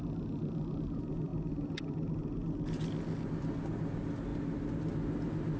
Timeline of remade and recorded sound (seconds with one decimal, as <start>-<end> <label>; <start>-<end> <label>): 0.0-5.6 recorded